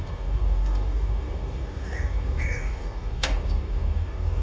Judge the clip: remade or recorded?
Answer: remade